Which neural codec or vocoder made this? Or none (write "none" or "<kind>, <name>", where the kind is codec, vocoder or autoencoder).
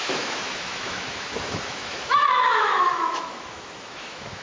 autoencoder, DAC-VAE